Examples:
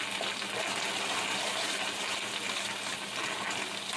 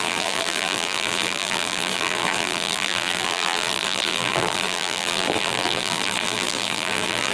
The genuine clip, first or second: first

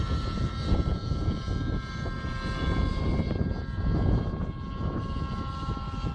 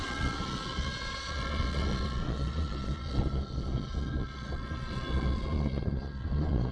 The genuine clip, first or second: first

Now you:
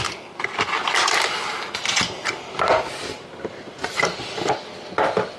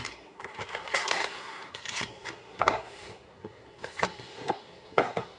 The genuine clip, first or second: first